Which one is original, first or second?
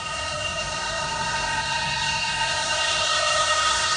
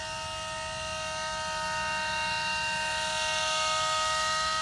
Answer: second